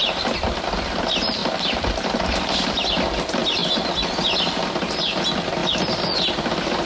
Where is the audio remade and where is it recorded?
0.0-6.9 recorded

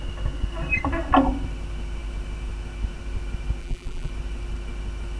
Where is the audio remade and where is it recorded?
0.0-3.6 recorded; 3.6-4.1 remade; 4.1-5.2 recorded

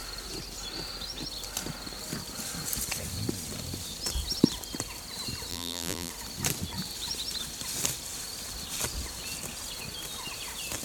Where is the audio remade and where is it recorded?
0.0-5.5 recorded; 5.5-6.1 remade; 6.1-10.8 recorded

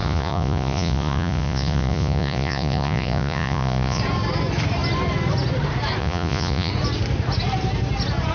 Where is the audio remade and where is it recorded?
0.0-4.0 remade; 4.0-6.0 recorded; 6.0-6.7 remade; 6.7-8.3 recorded

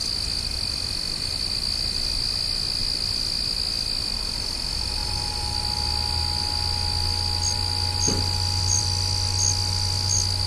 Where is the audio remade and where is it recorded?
0.0-10.5 recorded

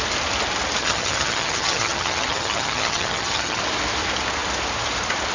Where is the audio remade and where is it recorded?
0.0-0.8 recorded; 0.8-3.6 remade; 3.6-5.3 recorded

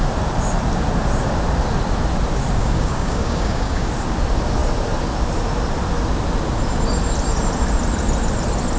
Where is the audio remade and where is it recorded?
0.0-2.6 recorded; 2.6-3.9 remade; 3.9-8.8 recorded

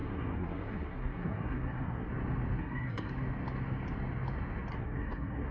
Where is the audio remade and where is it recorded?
0.0-2.1 remade; 2.1-2.6 recorded; 2.6-3.1 remade; 3.1-4.7 recorded; 4.7-5.5 remade